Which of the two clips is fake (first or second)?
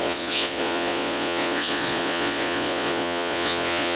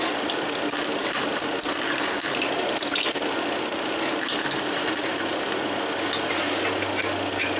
first